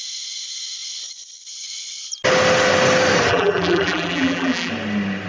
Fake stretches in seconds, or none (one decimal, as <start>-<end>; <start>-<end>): 3.3-4.7